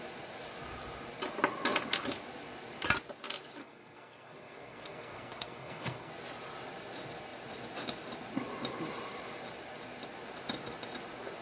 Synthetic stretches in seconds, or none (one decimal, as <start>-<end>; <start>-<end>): 3.6-6.1